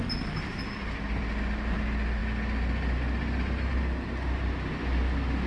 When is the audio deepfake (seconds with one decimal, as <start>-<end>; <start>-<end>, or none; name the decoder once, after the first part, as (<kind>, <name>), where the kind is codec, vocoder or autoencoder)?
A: none